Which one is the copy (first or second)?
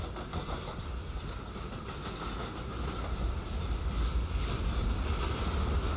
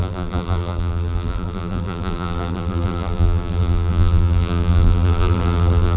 second